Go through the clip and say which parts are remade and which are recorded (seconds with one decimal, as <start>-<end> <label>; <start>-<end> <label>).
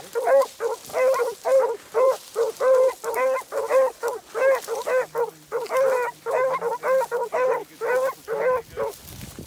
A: 0.0-0.9 recorded; 0.9-2.9 remade; 2.9-9.5 recorded